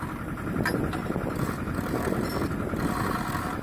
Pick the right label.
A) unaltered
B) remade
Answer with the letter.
A